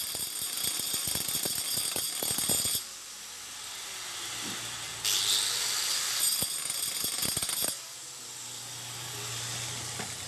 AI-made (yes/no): no